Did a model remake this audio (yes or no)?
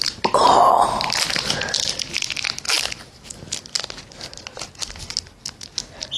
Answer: no